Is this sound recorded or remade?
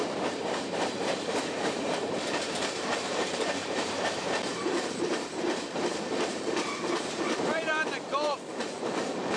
remade